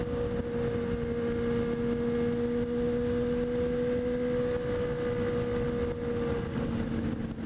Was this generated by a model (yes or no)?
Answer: no